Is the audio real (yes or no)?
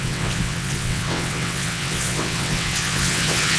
no